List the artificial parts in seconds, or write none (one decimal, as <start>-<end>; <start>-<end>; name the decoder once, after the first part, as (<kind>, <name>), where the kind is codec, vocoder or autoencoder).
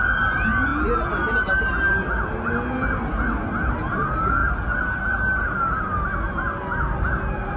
none